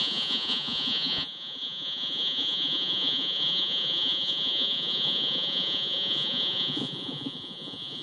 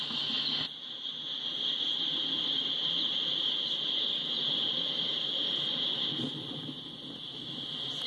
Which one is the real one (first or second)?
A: second